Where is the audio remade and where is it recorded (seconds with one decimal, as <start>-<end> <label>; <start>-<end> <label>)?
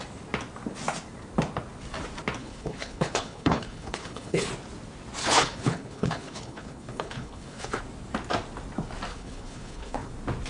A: 0.0-2.4 recorded; 2.4-4.5 remade; 4.5-5.2 recorded; 5.2-7.8 remade; 7.8-9.1 recorded; 9.1-10.1 remade; 10.1-10.5 recorded